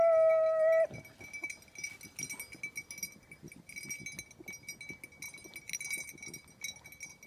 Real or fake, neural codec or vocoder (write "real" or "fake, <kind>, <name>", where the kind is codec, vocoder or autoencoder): real